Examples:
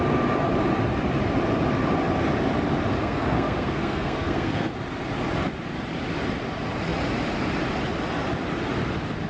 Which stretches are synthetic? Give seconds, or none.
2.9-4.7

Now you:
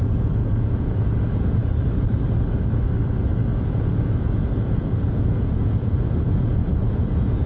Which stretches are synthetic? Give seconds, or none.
0.0-1.6; 3.5-7.5

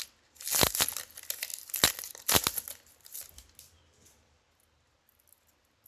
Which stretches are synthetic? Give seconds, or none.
none